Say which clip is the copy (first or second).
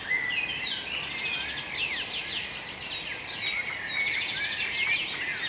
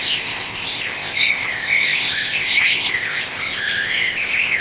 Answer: second